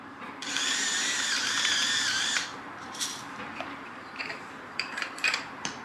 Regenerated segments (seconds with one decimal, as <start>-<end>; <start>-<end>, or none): 0.0-5.8